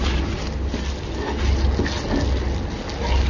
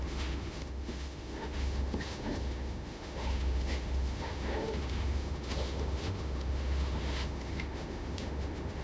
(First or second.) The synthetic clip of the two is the second